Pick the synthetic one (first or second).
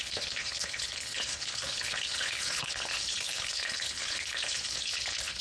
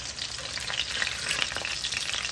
first